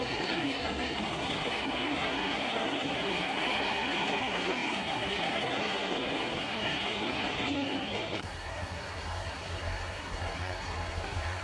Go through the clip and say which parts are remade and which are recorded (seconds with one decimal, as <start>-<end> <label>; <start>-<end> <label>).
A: 0.0-11.4 remade